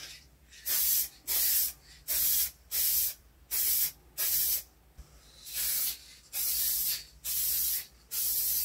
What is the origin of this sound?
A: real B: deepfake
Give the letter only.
A